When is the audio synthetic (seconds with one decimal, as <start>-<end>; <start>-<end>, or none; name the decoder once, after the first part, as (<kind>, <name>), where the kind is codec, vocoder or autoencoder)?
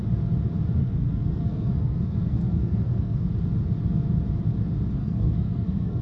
0.8-3.3 (codec, SNAC); 5.0-6.0